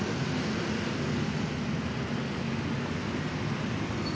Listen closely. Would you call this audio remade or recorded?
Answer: recorded